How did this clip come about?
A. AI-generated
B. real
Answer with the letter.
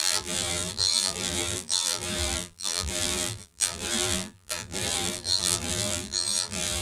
A